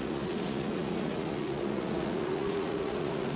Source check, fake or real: fake